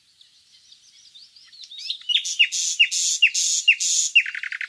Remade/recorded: recorded